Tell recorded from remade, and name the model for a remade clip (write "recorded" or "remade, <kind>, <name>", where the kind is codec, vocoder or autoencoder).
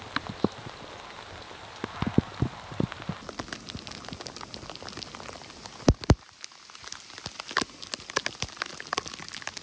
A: recorded